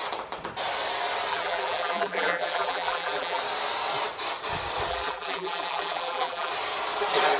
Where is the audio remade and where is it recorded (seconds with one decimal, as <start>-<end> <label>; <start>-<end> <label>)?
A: 0.0-1.3 recorded; 1.3-3.4 remade; 3.4-4.9 recorded; 4.9-6.5 remade; 6.5-7.4 recorded